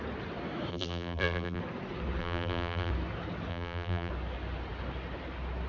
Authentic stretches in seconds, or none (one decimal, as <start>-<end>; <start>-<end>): 0.0-0.7; 1.6-2.2; 2.9-3.5; 4.1-5.7